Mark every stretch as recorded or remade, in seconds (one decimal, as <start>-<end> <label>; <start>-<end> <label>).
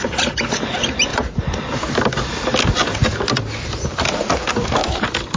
0.0-5.4 recorded